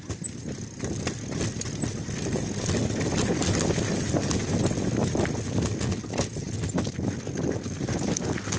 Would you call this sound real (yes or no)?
yes